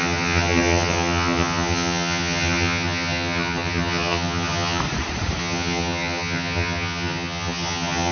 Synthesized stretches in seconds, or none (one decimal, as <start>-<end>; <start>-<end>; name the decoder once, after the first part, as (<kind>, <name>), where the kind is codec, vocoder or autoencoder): 0.0-4.8 (vocoder, HiFi-GAN); 5.4-8.1